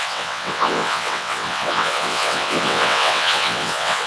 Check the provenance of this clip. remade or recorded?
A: remade